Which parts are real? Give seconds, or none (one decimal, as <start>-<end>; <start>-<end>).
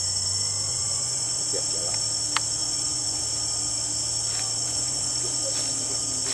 0.0-0.7; 1.4-2.6; 3.2-4.6; 5.4-6.3